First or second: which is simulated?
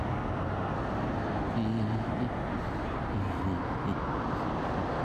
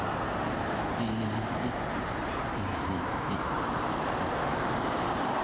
second